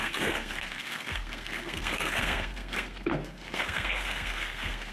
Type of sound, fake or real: fake